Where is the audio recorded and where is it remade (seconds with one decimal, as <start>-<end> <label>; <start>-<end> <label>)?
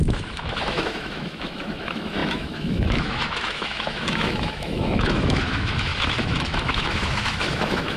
0.0-8.0 remade